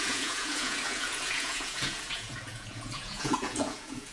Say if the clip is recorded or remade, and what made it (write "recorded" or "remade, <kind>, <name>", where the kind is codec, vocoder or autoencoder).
remade, vocoder, Vocos